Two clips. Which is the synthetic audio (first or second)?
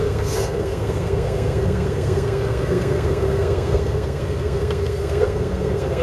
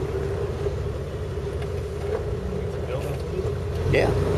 first